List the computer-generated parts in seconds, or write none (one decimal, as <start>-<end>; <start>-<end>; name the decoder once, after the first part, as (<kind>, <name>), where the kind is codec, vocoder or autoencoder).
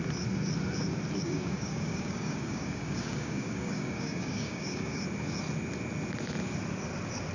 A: 1.2-5.0 (codec, DAC)